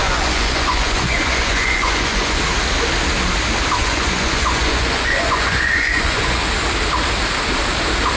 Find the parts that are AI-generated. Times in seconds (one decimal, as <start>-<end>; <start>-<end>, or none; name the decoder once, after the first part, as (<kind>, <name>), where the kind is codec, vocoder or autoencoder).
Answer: 0.0-2.4 (vocoder, Vocos); 3.8-6.4